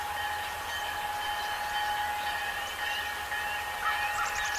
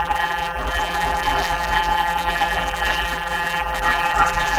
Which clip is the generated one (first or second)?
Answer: second